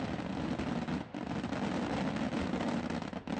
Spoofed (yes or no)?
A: no